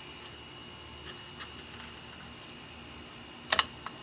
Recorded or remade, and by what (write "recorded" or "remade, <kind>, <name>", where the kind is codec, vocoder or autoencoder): recorded